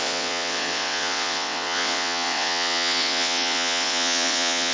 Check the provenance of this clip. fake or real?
fake